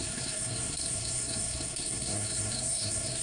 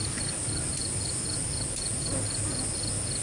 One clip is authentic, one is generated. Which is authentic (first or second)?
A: second